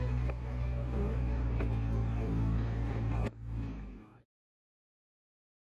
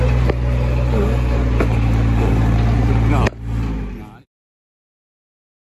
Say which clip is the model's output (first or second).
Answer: first